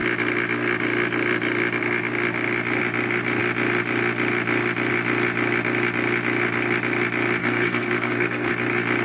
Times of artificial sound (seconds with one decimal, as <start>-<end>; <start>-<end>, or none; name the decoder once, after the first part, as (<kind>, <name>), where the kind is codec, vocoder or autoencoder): 7.4-8.5 (codec, SNAC)